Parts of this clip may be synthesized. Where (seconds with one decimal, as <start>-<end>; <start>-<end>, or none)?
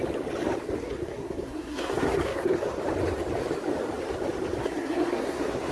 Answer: 0.8-2.8; 4.6-5.7